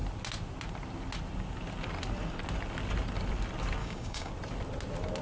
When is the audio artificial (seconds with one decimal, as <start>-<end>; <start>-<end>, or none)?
3.8-4.3